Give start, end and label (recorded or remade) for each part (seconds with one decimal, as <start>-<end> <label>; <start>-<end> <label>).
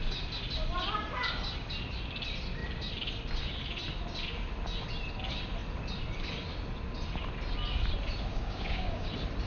0.0-8.3 recorded; 8.3-9.1 remade; 9.1-9.5 recorded